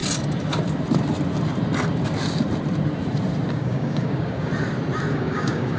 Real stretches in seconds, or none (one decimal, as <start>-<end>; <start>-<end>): 0.0-3.5; 4.5-5.1